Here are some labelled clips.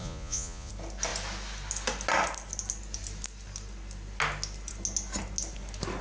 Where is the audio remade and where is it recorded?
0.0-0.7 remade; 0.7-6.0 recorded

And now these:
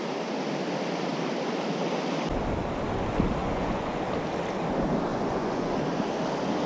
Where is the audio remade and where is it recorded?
0.0-3.4 recorded; 3.4-4.0 remade; 4.0-5.1 recorded; 5.1-5.7 remade; 5.7-6.7 recorded

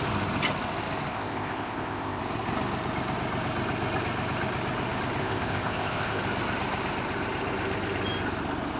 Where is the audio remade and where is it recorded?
0.0-1.1 recorded; 1.1-2.2 remade; 2.2-5.2 recorded; 5.2-6.2 remade; 6.2-8.8 recorded

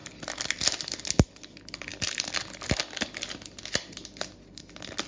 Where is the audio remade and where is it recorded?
0.0-5.1 recorded

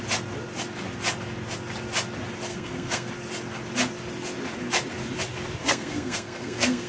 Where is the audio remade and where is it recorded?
0.0-2.5 recorded; 2.5-3.1 remade; 3.1-5.6 recorded; 5.6-6.9 remade